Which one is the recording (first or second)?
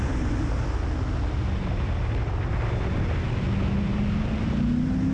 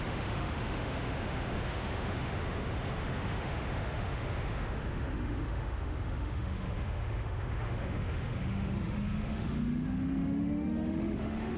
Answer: first